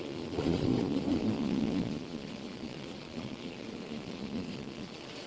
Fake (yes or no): yes